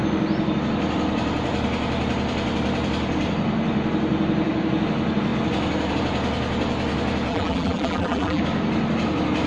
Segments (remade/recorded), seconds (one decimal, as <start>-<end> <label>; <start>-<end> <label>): 0.0-7.3 recorded; 7.3-8.4 remade; 8.4-9.5 recorded